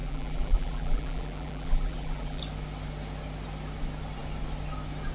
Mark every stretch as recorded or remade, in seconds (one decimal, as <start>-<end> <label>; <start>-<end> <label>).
0.0-2.4 remade; 2.4-5.1 recorded